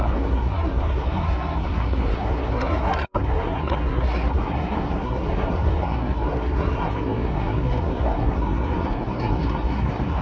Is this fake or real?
fake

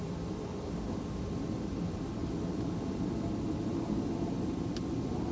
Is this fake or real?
real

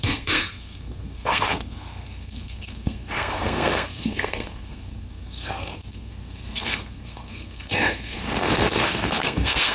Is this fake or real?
fake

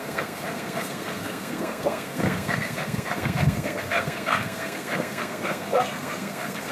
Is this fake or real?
fake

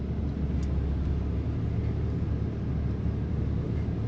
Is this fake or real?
real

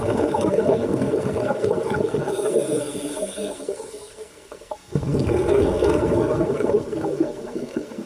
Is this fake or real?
fake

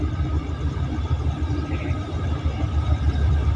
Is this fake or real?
real